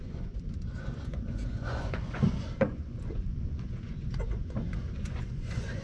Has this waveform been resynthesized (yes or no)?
yes